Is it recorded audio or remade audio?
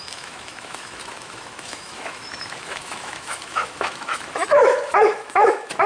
remade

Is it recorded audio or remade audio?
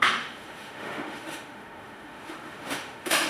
remade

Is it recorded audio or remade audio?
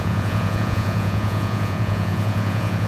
remade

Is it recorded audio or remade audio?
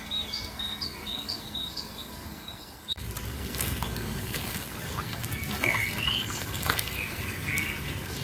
remade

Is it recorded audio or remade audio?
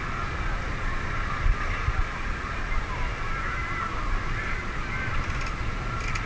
recorded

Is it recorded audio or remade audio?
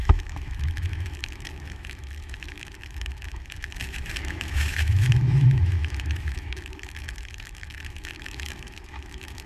remade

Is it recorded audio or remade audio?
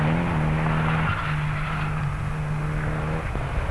recorded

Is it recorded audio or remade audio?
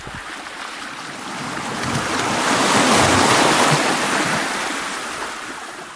recorded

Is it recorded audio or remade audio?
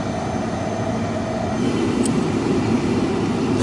recorded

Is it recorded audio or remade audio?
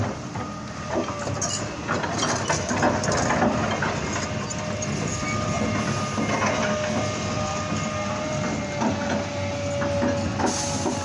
recorded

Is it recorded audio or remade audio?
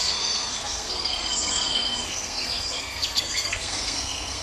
remade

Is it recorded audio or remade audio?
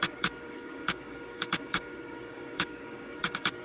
remade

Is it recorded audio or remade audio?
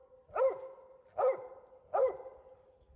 recorded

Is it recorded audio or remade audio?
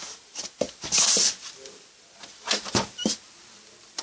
recorded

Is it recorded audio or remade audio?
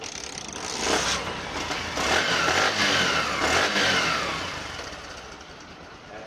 recorded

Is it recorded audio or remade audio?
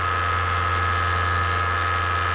recorded